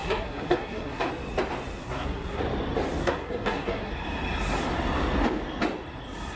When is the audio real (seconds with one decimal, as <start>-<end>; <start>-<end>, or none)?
1.1-1.8; 2.4-3.0; 3.9-6.4